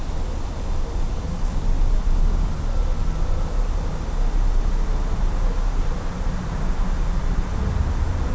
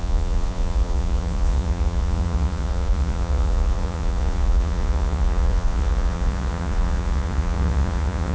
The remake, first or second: second